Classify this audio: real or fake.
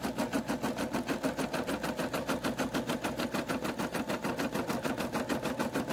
real